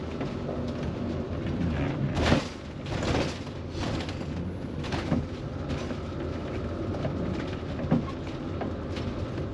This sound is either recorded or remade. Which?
recorded